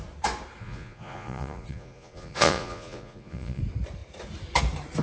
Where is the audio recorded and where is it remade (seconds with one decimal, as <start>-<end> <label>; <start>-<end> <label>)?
0.0-0.6 recorded; 0.6-3.6 remade; 3.6-5.0 recorded